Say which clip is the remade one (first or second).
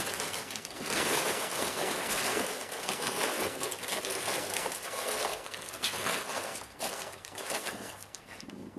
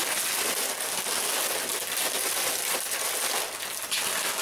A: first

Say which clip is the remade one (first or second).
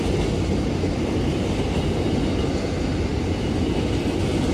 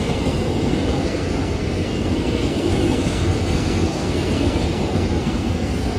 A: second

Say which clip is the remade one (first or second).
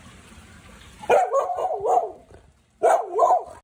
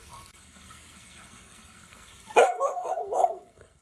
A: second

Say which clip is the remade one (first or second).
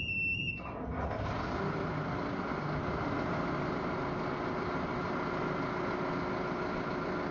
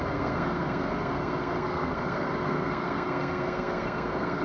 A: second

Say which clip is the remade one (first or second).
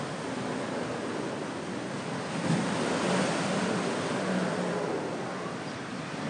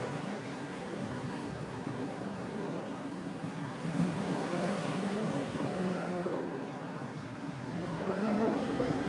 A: second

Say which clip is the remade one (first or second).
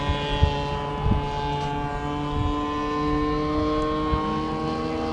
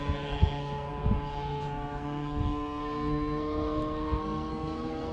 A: second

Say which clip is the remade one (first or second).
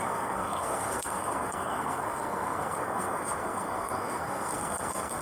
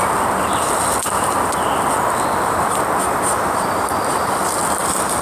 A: first